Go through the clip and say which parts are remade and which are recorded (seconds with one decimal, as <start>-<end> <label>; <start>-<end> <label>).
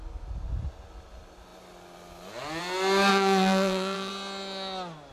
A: 0.0-3.1 recorded; 3.1-4.1 remade; 4.1-5.1 recorded